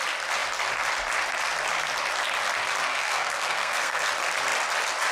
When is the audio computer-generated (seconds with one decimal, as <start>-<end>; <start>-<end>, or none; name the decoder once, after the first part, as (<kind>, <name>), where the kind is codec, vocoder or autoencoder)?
2.9-4.1 (codec, SNAC)